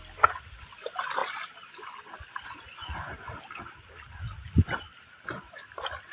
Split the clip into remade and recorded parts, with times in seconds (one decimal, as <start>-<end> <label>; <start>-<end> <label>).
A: 0.0-6.1 recorded